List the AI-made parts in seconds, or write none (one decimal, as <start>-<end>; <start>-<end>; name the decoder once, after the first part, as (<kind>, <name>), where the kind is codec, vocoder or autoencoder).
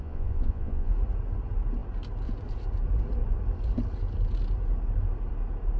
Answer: 0.0-0.9 (vocoder, Vocos)